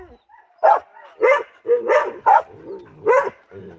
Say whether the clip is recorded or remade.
recorded